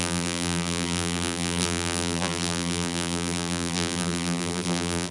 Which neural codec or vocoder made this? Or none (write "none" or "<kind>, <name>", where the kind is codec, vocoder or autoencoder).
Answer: vocoder, BigVGAN v2